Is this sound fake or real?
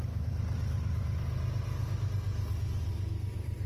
real